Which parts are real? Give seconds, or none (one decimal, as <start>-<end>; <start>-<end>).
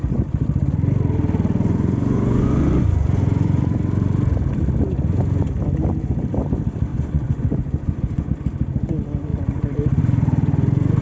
0.0-1.7; 3.6-6.9; 8.3-11.0